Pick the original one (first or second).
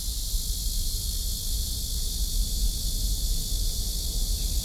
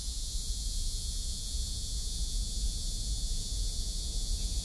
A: first